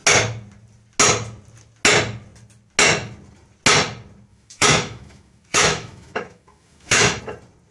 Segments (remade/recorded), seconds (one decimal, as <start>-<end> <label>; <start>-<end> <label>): 0.0-4.3 recorded; 4.3-7.2 remade; 7.2-7.7 recorded